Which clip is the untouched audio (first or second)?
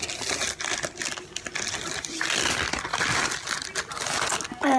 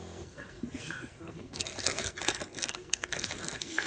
first